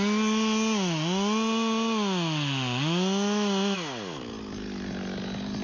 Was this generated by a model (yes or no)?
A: no